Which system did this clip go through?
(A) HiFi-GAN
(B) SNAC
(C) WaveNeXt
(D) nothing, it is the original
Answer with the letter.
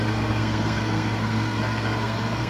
B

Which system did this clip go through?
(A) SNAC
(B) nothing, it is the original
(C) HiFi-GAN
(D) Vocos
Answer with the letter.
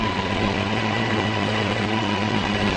D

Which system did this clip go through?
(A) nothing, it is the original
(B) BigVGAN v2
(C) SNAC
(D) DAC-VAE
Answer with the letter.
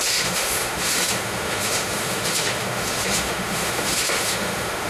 D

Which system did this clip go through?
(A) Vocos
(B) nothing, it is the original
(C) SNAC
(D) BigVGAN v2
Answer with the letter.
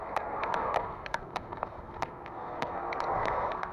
C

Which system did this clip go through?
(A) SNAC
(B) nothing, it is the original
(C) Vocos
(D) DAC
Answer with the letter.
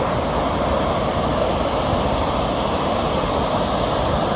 B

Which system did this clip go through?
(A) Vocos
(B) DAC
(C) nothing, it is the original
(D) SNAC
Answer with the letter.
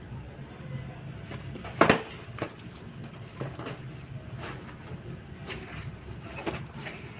C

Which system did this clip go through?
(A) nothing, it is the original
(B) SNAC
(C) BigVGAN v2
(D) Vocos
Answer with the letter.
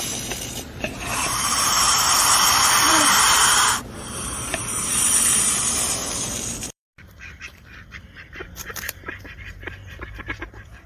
C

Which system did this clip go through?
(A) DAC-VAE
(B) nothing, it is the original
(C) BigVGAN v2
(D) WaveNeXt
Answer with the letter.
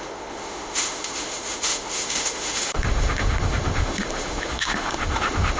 A